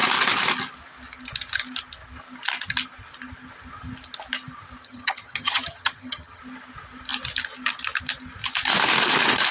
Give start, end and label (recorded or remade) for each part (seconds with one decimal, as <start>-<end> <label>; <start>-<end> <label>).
0.0-4.8 recorded; 4.8-6.4 remade; 6.4-9.5 recorded